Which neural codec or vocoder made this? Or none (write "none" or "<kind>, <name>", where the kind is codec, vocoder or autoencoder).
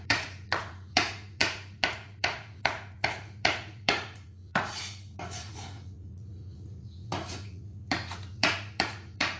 vocoder, Vocos